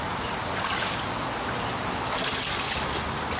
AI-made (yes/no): no